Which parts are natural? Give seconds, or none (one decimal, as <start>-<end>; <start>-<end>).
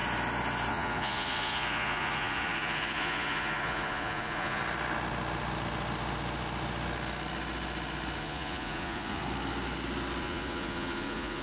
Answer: 0.0-0.7; 4.6-8.2; 9.2-10.2